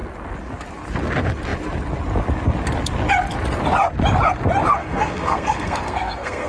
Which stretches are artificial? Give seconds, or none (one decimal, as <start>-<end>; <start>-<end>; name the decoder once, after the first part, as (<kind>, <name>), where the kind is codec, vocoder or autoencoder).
4.8-6.5 (codec, SNAC)